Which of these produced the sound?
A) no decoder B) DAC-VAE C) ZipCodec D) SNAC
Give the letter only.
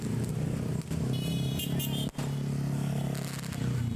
A